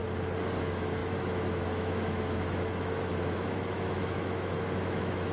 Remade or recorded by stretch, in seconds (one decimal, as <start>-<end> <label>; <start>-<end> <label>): 0.0-0.6 recorded; 0.6-5.3 remade